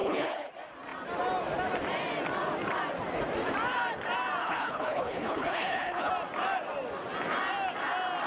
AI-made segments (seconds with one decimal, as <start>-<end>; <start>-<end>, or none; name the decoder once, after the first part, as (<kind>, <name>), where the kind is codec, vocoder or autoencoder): 0.0-0.5 (codec, HILCodec); 4.4-6.1